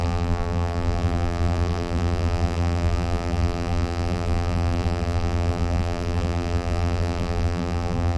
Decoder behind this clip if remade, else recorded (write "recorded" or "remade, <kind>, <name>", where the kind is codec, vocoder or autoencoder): remade, vocoder, BigVGAN v2